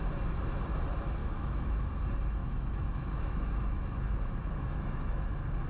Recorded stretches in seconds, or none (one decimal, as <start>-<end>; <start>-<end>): 0.0-1.2; 1.9-2.4; 5.3-5.7